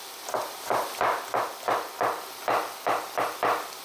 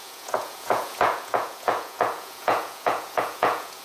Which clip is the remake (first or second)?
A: second